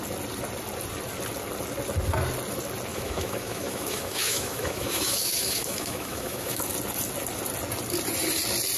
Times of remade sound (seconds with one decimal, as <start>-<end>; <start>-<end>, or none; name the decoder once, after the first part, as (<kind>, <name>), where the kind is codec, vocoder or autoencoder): 2.9-6.6 (autoencoder, DAC-VAE)